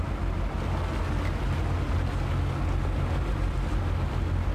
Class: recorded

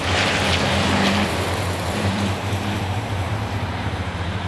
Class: remade